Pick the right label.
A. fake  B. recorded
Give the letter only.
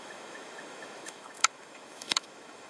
A